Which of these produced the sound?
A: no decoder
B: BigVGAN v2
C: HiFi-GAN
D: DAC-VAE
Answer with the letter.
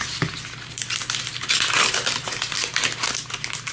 A